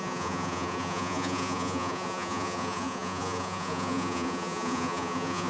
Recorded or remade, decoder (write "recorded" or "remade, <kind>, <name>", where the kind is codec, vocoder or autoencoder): remade, vocoder, Vocos